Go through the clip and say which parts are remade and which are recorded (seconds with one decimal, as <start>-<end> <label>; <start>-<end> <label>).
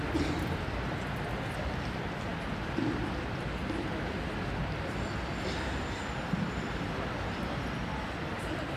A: 0.0-8.8 recorded